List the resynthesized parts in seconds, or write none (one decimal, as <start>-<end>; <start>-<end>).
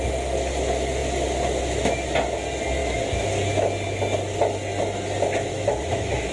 5.5-6.3